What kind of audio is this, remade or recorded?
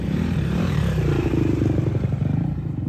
remade